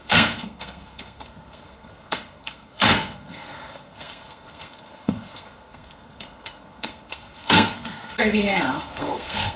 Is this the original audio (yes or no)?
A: no